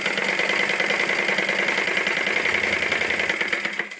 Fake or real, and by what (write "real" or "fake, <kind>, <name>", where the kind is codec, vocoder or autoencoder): real